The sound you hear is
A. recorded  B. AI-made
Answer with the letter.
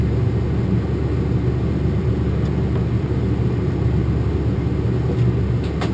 A